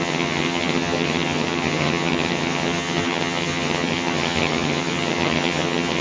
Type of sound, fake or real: fake